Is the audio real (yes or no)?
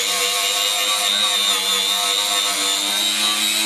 yes